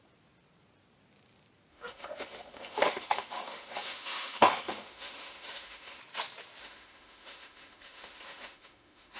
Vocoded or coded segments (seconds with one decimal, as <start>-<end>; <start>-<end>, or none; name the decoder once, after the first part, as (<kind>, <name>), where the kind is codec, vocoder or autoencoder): 1.7-6.0 (autoencoder, DAC-VAE); 6.6-9.2